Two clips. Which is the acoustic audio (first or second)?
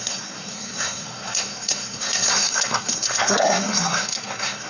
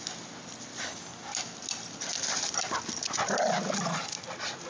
second